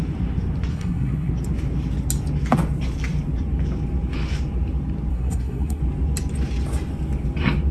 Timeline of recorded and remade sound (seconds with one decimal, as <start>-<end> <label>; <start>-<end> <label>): 0.0-0.7 recorded; 0.7-1.3 remade; 1.3-5.1 recorded; 5.1-5.8 remade; 5.8-7.7 recorded